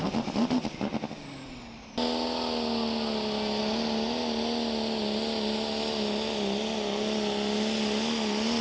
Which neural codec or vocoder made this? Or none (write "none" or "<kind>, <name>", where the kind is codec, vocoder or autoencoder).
none